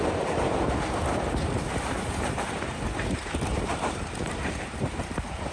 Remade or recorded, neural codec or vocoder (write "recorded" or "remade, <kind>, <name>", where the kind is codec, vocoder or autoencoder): remade, vocoder, BigVGAN v2